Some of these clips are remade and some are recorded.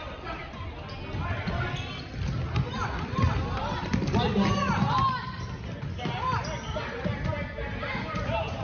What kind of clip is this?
recorded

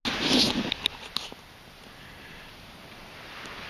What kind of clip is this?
recorded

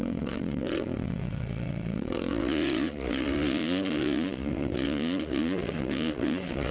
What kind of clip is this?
remade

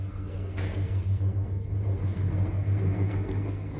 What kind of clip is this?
remade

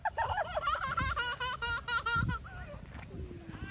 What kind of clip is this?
recorded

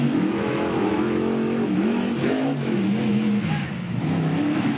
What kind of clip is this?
remade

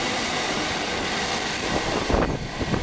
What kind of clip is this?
remade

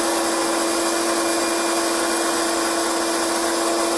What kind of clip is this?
recorded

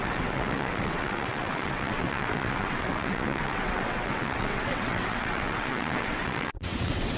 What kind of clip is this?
remade